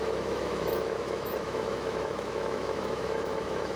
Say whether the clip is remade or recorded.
remade